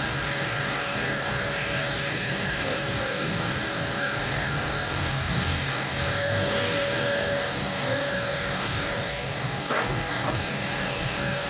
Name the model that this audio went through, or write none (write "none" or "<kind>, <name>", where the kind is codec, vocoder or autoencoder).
codec, DAC